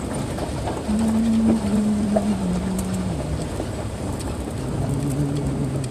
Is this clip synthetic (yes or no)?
yes